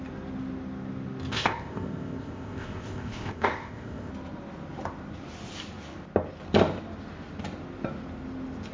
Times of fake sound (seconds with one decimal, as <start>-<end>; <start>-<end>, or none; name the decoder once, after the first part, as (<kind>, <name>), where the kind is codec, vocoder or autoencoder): 1.3-4.1 (codec, ZipCodec)